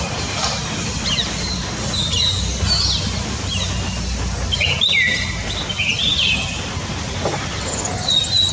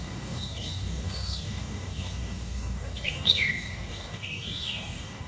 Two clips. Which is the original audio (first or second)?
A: first